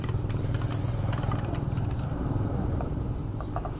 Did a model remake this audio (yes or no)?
no